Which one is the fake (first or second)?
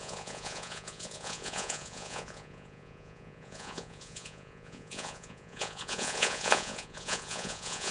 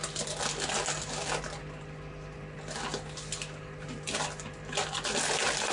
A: first